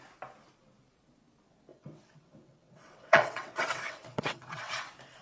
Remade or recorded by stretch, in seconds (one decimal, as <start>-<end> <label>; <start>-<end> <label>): 0.0-1.7 recorded; 1.7-4.8 remade; 4.8-5.2 recorded